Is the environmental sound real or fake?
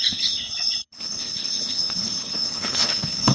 fake